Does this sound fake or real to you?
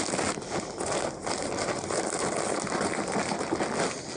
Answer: real